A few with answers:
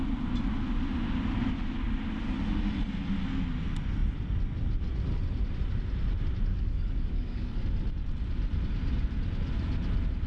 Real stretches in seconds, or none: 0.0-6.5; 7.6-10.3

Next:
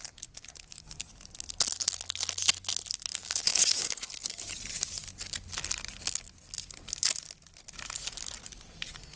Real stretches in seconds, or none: 0.0-3.1; 4.4-9.2

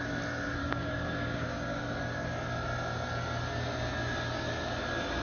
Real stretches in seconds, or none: 0.0-0.6; 1.8-5.2

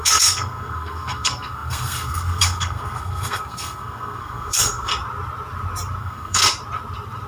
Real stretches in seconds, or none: 4.9-6.0; 6.4-7.3

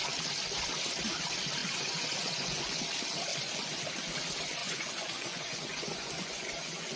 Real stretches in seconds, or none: 0.0-1.6; 2.8-3.3; 3.8-4.6

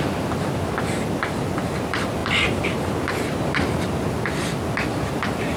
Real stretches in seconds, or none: none